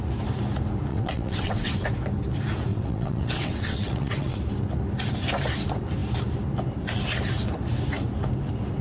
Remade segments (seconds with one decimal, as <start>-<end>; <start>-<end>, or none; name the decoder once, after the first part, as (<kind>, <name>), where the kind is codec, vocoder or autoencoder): 0.9-1.7 (vocoder, WaveNeXt); 2.7-4.4